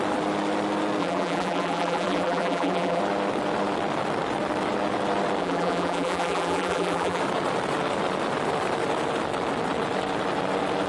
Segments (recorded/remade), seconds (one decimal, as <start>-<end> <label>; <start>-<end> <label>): 0.0-1.0 recorded; 1.0-3.0 remade; 3.0-5.4 recorded; 5.4-7.2 remade; 7.2-10.9 recorded